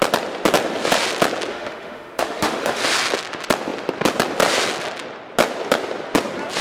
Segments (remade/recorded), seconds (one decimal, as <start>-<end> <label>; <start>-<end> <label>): 0.0-1.5 recorded; 1.5-2.8 remade; 2.8-6.6 recorded